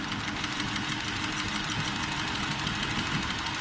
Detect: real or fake real